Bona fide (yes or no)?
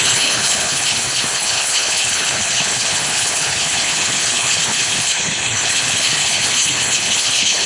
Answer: no